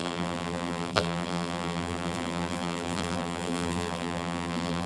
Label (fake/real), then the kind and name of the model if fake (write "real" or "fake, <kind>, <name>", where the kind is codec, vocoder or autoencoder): fake, vocoder, BigVGAN v2